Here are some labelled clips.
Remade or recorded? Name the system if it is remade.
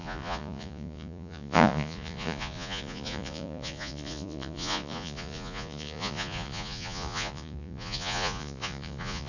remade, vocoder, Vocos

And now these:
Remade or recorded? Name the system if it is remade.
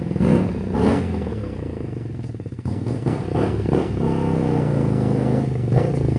remade, codec, SNAC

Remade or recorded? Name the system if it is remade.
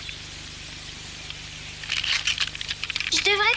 recorded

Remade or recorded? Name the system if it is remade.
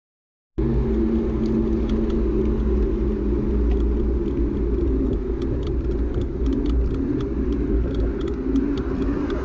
recorded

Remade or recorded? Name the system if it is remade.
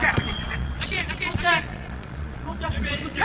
remade, vocoder, Vocos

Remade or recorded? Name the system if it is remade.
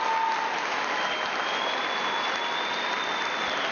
recorded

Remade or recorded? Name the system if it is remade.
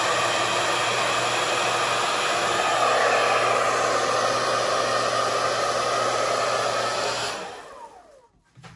recorded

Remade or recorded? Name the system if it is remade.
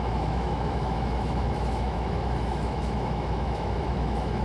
remade, autoencoder, DAC-VAE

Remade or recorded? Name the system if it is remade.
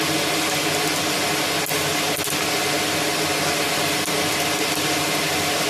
recorded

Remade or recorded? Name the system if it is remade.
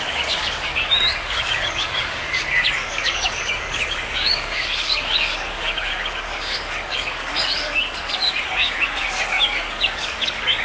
remade, codec, DAC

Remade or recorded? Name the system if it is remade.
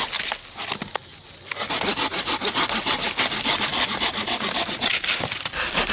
recorded